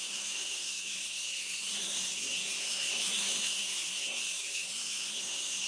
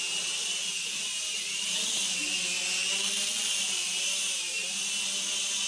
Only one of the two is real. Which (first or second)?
second